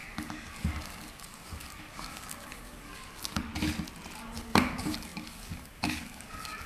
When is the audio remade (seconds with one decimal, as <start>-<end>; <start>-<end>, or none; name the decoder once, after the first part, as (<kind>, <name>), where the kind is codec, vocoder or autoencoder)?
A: 0.0-3.5 (codec, DAC); 4.2-6.7